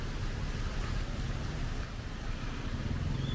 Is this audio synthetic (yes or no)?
no